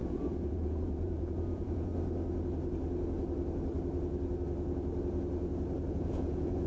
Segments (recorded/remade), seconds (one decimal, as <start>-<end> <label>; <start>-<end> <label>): 0.0-1.9 remade; 1.9-5.9 recorded; 5.9-6.7 remade